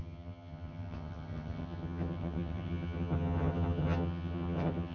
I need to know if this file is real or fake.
fake